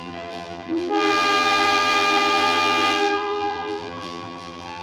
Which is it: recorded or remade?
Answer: remade